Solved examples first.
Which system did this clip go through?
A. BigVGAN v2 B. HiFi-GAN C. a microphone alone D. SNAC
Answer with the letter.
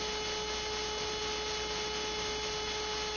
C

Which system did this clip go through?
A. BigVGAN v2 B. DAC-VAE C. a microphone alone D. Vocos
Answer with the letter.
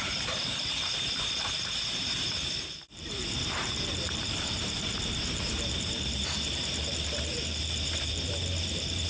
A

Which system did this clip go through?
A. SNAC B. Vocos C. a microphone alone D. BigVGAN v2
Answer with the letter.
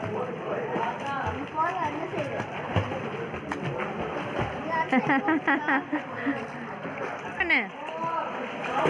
C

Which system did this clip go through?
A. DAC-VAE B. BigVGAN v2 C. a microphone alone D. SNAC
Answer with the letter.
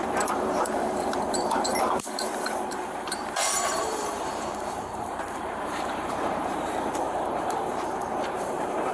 B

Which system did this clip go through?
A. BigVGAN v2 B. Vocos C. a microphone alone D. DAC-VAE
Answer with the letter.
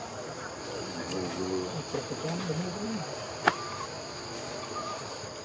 A